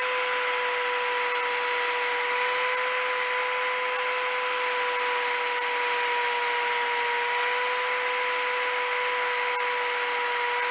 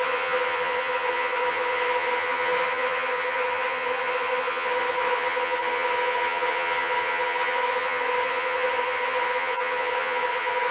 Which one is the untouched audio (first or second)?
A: first